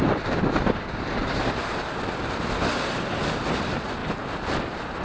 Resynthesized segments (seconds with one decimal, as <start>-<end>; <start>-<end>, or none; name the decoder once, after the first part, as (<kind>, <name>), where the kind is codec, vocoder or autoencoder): 0.0-1.4 (vocoder, BigVGAN v2)